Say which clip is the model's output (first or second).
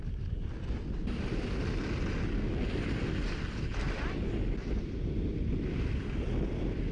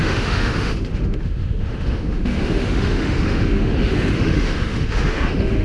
second